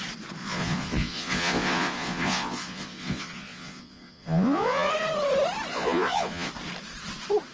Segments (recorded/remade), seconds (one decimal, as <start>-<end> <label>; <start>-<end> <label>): 0.0-0.4 recorded; 0.4-4.9 remade; 4.9-5.7 recorded; 5.7-6.5 remade; 6.5-7.5 recorded